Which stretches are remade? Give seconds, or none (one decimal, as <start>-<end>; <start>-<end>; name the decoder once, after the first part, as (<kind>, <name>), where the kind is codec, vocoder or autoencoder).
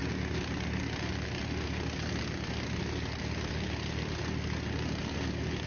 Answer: none